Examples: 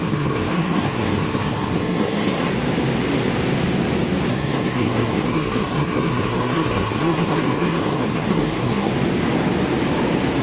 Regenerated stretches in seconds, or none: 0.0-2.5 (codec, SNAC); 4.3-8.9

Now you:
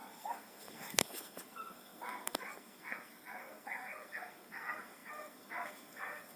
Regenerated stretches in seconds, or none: 0.0-6.4 (codec, SNAC)

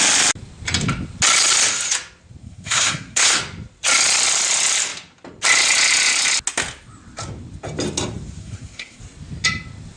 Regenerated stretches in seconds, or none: 2.4-3.4 (codec, SNAC); 8.4-9.0

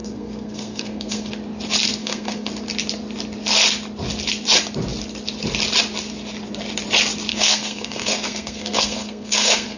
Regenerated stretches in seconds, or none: 0.0-1.3 (codec, SNAC); 2.0-2.5; 7.3-9.8